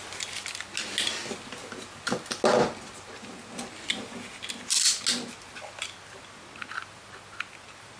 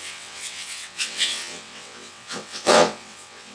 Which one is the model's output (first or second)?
second